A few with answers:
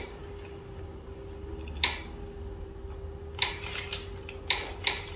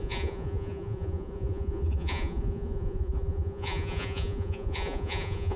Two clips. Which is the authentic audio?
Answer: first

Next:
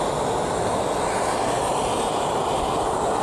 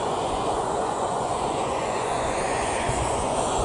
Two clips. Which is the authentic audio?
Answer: first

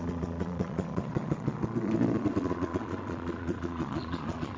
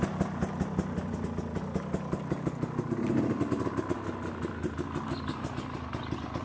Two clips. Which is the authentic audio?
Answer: second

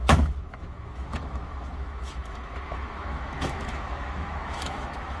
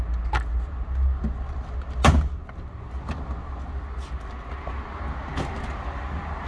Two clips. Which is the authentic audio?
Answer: second